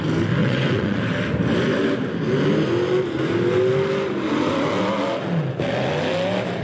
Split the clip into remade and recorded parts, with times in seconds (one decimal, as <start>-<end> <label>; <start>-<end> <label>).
0.0-0.4 recorded; 0.4-1.0 remade; 1.0-6.6 recorded